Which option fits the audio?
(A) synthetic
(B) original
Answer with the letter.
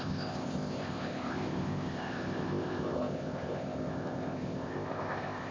A